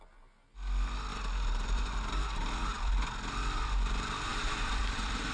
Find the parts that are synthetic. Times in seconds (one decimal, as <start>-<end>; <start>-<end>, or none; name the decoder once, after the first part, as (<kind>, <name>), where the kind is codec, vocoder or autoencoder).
1.1-3.1 (vocoder, BigVGAN v2)